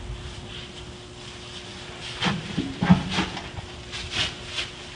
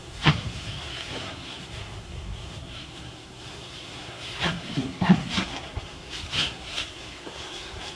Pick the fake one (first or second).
second